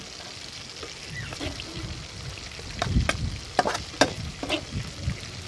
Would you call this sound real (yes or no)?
yes